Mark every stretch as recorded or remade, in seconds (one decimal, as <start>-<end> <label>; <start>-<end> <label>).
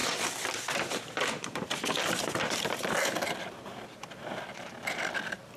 0.0-5.6 remade